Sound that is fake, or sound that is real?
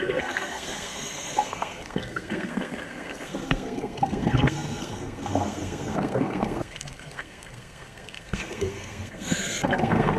fake